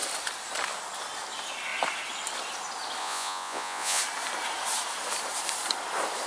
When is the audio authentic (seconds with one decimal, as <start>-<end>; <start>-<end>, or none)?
0.0-3.0; 4.0-6.3